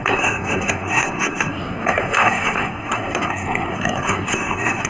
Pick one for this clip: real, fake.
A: fake